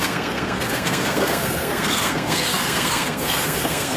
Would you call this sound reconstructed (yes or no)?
yes